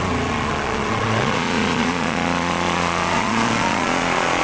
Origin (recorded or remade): remade